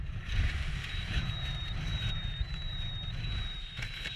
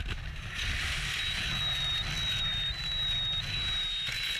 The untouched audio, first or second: second